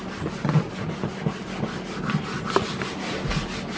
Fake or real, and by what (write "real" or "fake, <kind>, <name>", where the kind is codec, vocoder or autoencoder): real